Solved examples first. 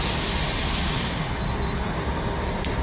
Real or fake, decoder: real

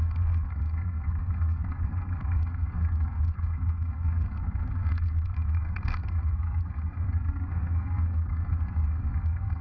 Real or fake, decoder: fake, codec, SNAC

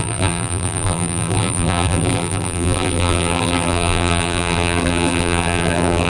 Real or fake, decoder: fake, vocoder, BigVGAN v2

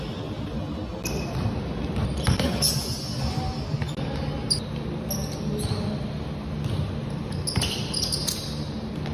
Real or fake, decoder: real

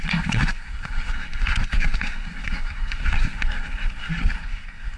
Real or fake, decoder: fake, codec, SNAC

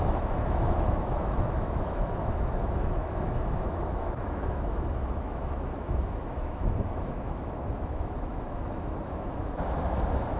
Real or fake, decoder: fake, autoencoder, DAC-VAE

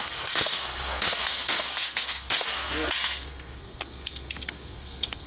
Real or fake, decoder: fake, codec, SNAC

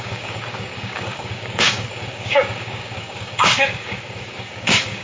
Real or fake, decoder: fake, codec, DAC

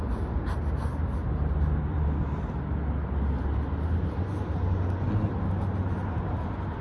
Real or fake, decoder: real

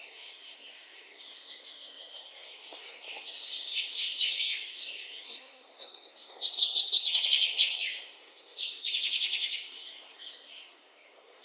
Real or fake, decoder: fake, codec, SNAC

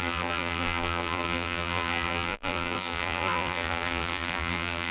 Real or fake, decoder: fake, vocoder, BigVGAN v2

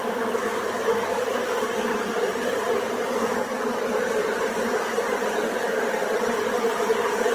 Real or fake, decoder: real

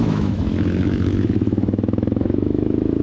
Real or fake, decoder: fake, autoencoder, DAC-VAE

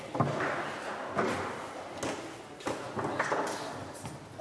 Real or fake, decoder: real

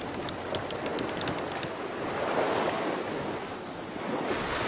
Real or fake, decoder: real